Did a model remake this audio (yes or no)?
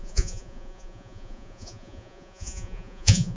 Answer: yes